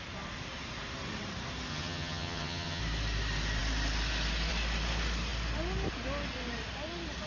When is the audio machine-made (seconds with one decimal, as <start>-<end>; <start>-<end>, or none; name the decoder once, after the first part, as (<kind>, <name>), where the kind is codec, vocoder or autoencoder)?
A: 1.7-2.8 (vocoder, HiFi-GAN)